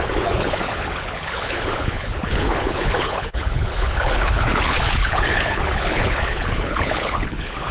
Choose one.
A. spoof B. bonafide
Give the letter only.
A